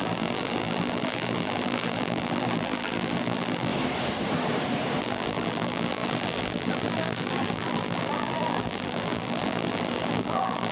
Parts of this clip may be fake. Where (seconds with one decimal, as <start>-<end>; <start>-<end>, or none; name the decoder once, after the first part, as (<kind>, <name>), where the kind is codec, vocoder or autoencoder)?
0.0-3.7 (vocoder, BigVGAN v2); 5.0-10.7